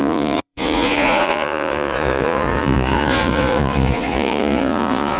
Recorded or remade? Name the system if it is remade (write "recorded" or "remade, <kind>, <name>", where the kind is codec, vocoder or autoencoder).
remade, vocoder, Vocos